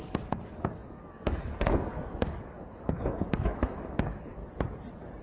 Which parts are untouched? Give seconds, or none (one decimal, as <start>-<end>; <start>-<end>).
4.4-5.2